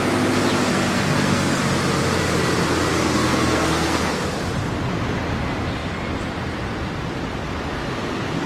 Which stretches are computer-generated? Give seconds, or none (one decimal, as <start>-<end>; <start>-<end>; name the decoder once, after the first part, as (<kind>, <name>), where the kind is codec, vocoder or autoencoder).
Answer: 0.7-1.6 (codec, SNAC); 2.9-4.2